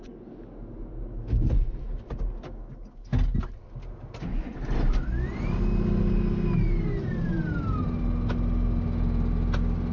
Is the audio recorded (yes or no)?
yes